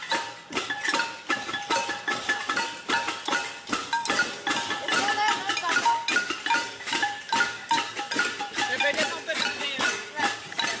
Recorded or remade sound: remade